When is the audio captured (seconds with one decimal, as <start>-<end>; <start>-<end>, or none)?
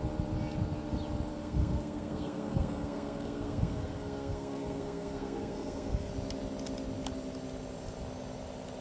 0.0-1.3; 6.1-8.8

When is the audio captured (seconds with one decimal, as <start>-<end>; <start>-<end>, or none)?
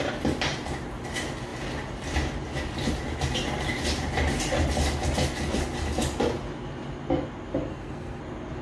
0.0-7.7; 8.2-8.6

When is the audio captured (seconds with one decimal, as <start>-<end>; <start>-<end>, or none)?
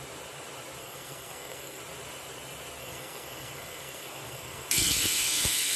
0.0-0.8; 1.8-2.8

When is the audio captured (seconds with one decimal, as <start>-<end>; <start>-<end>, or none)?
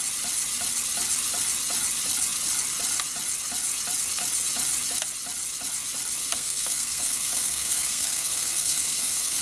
0.0-6.2